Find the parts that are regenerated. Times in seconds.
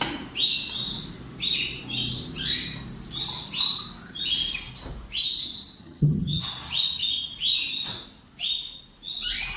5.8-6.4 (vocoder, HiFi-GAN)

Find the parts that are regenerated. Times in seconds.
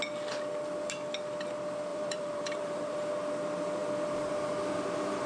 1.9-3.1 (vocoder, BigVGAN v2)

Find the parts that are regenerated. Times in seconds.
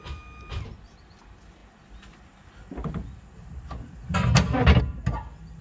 none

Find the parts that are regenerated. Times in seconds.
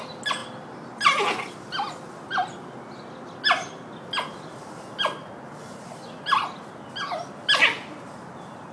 none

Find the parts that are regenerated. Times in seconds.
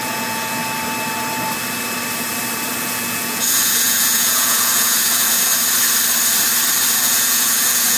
0.0-0.6 (vocoder, Vocos); 2.8-5.5; 6.9-8.0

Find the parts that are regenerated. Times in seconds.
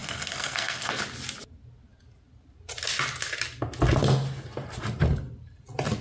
0.0-1.0 (codec, SNAC)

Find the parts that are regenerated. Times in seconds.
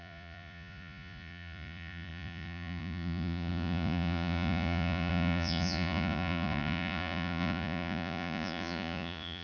0.0-9.4 (vocoder, Vocos)